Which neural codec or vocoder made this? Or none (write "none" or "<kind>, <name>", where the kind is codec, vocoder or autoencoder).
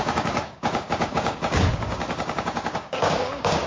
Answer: codec, DAC